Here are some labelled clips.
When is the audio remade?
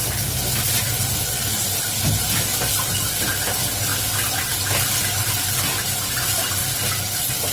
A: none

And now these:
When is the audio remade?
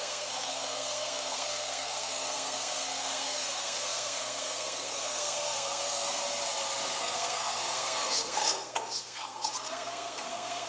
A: 0.0-6.2; 7.0-10.7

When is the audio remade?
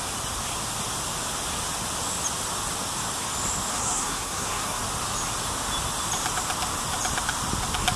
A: 3.7-4.8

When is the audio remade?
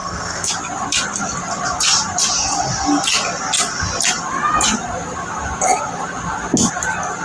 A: 0.0-0.5